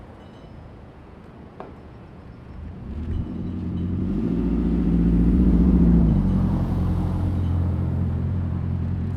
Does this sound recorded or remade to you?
remade